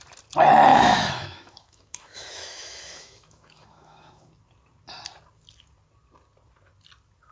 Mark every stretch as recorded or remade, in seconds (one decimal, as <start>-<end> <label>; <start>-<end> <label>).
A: 0.0-0.7 recorded; 0.7-4.3 remade; 4.3-7.3 recorded